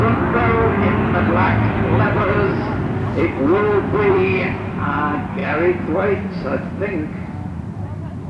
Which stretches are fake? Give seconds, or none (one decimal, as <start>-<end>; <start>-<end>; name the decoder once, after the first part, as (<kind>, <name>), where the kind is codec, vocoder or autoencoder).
0.0-2.5 (vocoder, BigVGAN v2); 3.1-8.3